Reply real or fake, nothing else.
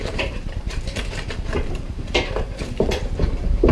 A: fake